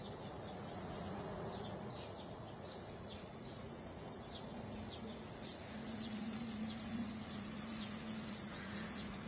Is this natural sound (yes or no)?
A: no